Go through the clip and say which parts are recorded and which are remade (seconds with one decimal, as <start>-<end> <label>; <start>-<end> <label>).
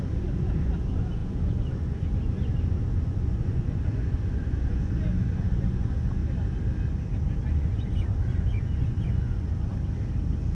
0.0-6.2 remade; 6.2-7.5 recorded; 7.5-9.7 remade; 9.7-10.5 recorded